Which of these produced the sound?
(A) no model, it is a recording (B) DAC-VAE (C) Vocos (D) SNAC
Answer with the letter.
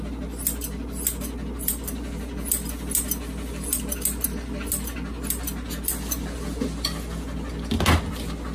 A